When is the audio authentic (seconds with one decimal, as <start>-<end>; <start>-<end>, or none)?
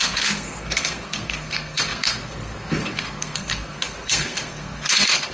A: none